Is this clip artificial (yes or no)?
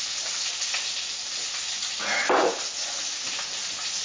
no